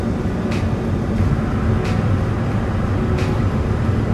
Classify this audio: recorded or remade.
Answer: recorded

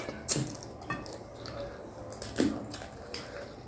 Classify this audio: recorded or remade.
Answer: recorded